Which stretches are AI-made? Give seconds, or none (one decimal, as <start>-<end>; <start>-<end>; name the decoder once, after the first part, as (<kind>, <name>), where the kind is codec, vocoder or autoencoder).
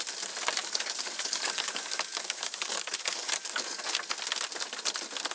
0.6-3.8 (codec, DAC)